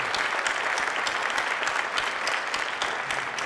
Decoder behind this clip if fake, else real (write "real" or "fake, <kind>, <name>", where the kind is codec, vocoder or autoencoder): real